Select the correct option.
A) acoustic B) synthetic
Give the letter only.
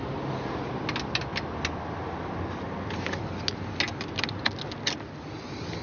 A